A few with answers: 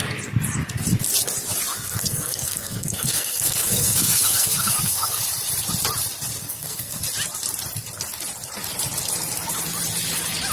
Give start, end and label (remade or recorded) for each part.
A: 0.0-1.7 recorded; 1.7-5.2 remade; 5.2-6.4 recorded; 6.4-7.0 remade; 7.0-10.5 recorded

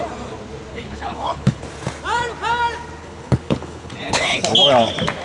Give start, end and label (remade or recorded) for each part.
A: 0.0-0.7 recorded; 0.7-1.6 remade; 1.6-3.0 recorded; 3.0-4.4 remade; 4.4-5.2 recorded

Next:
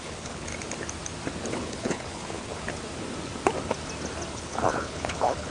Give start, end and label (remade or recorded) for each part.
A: 0.0-0.5 remade; 0.5-1.5 recorded; 1.5-2.5 remade; 2.5-4.3 recorded; 4.3-5.5 remade

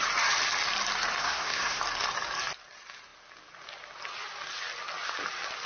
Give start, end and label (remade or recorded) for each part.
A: 0.0-1.2 recorded; 1.2-1.8 remade; 1.8-5.7 recorded

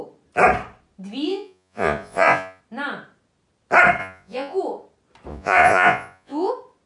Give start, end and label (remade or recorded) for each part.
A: 0.0-1.3 recorded; 1.3-2.6 remade; 2.6-4.0 recorded; 4.0-4.6 remade; 4.6-5.3 recorded; 5.3-6.5 remade; 6.5-6.9 recorded

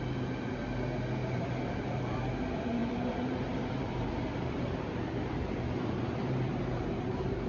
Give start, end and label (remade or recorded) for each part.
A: 0.0-1.2 recorded; 1.2-2.2 remade; 2.2-2.8 recorded; 2.8-7.5 remade

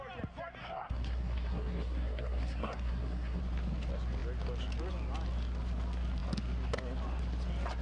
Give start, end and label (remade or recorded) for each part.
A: 0.0-0.6 recorded; 0.6-3.4 remade; 3.4-7.8 recorded